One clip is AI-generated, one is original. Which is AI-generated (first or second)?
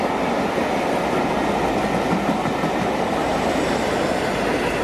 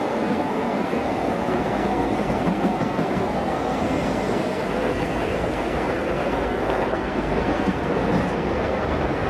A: second